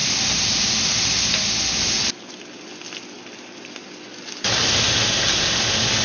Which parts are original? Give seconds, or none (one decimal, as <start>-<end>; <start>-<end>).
0.0-6.0